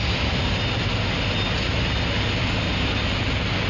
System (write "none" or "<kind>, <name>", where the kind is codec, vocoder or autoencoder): none